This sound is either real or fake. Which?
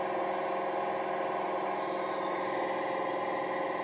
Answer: real